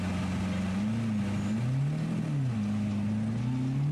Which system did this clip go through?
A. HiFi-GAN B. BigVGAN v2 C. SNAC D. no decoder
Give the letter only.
D